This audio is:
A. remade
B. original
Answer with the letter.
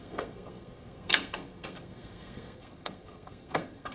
A